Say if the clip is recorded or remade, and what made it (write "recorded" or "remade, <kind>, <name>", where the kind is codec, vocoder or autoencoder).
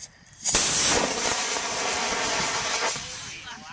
recorded